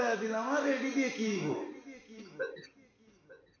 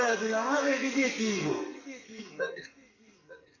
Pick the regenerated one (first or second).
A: second